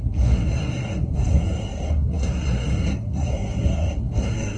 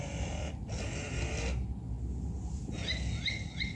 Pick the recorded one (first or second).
second